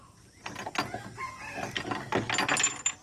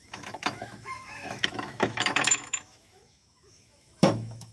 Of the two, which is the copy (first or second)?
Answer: second